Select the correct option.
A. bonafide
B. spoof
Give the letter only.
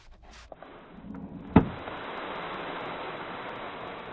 A